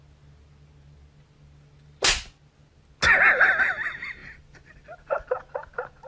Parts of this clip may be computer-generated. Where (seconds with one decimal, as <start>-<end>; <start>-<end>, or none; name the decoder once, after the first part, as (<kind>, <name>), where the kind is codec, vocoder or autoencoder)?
4.2-5.2 (vocoder, BigVGAN v2)